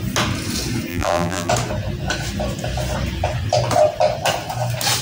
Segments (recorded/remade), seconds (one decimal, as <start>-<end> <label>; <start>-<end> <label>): 0.0-0.9 recorded; 0.9-1.5 remade; 1.5-5.0 recorded